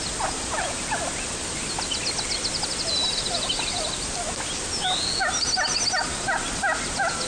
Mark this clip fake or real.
real